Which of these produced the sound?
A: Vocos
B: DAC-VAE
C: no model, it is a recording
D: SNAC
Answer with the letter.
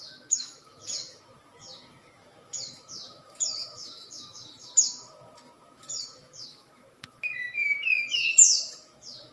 B